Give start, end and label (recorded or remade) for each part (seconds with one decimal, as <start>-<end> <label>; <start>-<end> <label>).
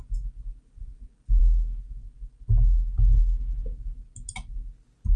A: 0.0-5.2 recorded